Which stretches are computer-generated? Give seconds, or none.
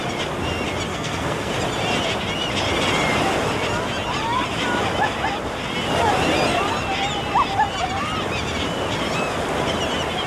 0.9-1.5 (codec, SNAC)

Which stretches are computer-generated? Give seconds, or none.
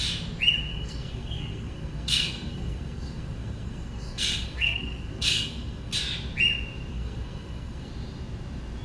0.7-5.9 (codec, SNAC); 6.9-7.9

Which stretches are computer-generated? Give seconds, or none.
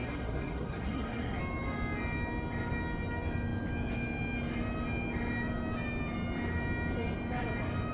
0.0-1.4 (codec, SNAC)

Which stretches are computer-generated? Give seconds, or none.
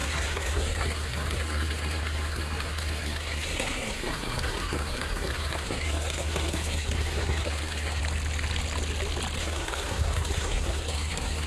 0.0-8.0 (codec, SNAC); 9.4-11.5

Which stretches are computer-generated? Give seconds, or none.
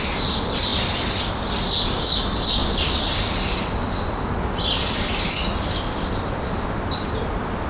none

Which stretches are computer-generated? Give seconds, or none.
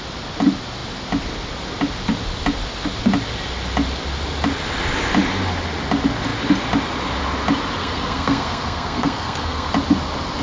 7.8-9.7 (codec, SNAC)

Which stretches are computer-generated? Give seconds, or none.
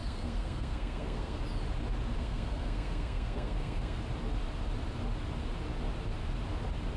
0.0-1.4 (codec, SNAC); 2.2-4.0